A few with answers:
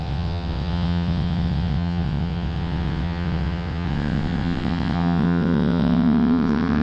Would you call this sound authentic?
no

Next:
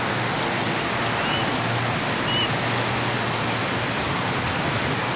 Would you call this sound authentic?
yes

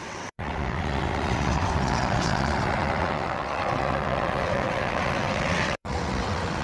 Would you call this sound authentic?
no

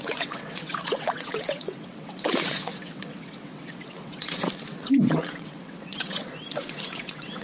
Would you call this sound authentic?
no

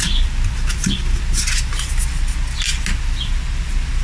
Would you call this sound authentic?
yes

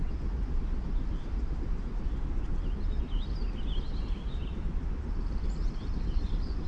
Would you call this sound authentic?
yes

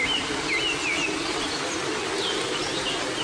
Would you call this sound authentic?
yes